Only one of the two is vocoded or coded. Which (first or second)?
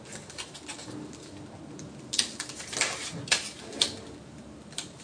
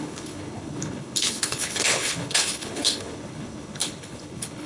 second